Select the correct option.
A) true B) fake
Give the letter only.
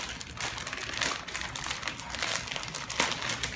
A